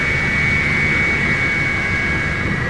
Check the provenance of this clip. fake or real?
real